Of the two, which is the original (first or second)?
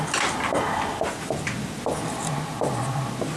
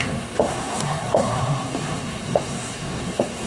first